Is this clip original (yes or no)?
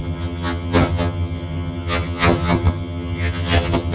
no